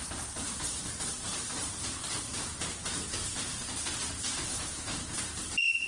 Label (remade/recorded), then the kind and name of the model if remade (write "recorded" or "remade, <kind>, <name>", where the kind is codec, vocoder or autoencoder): remade, vocoder, BigVGAN v2